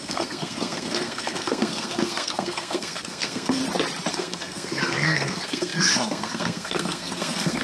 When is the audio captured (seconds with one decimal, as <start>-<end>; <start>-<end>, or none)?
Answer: 3.6-4.1